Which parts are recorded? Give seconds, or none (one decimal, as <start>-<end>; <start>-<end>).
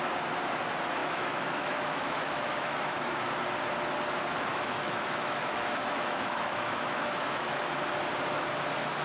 0.0-1.0; 3.3-4.5; 7.7-9.0